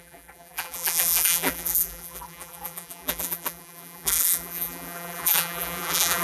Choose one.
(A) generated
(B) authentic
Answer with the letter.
A